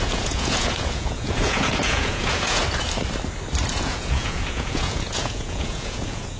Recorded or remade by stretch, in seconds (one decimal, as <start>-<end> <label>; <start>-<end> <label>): 0.0-2.6 remade; 2.6-3.7 recorded; 3.7-6.4 remade